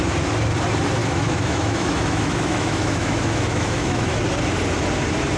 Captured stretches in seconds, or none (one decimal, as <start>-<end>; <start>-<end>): 0.0-1.0; 4.2-5.4